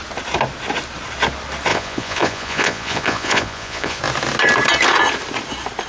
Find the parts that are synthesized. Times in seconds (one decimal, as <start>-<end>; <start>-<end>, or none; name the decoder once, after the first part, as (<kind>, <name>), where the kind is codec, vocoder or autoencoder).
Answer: 1.7-4.0 (vocoder, Vocos)